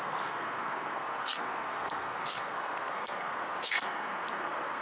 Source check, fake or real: fake